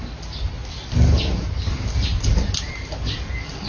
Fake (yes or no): no